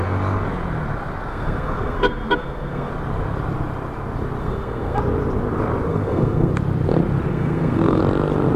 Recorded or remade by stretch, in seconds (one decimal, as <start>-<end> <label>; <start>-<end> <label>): 0.0-1.3 recorded; 1.3-2.9 remade; 2.9-4.4 recorded; 4.4-5.0 remade; 5.0-5.9 recorded; 5.9-6.5 remade; 6.5-7.3 recorded; 7.3-8.0 remade; 8.0-8.6 recorded